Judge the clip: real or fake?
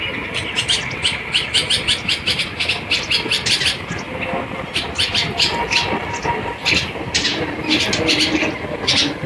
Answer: real